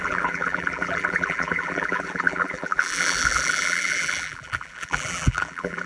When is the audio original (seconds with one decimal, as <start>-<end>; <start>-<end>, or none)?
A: none